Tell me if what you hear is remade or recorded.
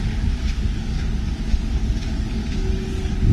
remade